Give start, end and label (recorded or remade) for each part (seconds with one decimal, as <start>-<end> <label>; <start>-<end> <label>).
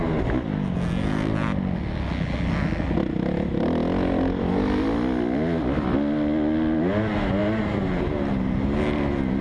0.0-9.4 recorded